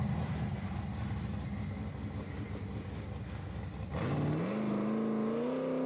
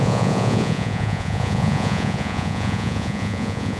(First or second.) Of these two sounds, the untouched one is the first